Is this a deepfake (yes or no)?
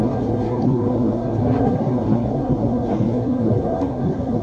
yes